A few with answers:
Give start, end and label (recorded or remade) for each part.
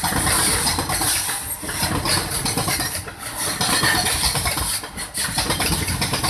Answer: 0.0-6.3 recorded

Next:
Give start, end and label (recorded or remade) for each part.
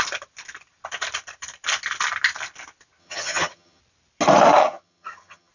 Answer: 0.0-3.0 recorded; 3.0-3.8 remade; 3.8-4.6 recorded; 4.6-5.5 remade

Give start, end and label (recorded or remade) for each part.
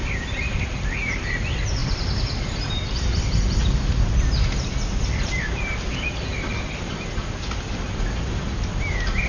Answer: 0.0-0.5 remade; 0.5-1.8 recorded; 1.8-2.4 remade; 2.4-4.9 recorded; 4.9-6.9 remade; 6.9-9.3 recorded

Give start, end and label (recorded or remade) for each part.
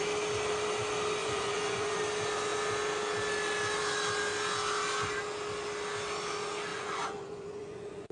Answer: 0.0-1.2 recorded; 1.2-2.0 remade; 2.0-6.7 recorded; 6.7-8.1 remade